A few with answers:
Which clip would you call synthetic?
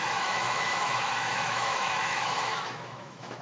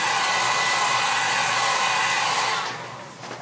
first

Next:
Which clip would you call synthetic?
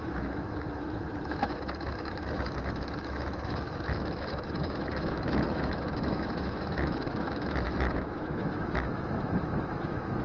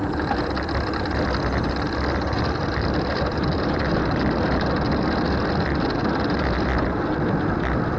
first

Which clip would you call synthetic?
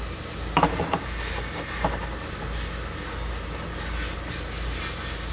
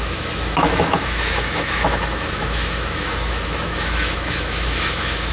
second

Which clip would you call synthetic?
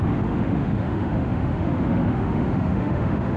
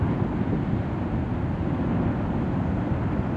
first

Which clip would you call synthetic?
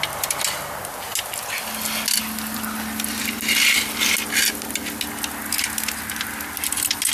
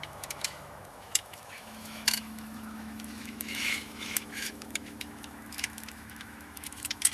second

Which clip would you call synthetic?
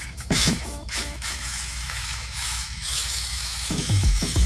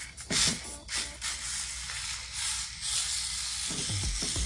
first